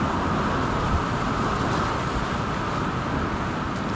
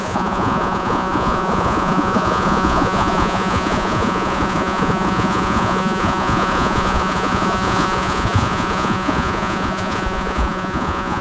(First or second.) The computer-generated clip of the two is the second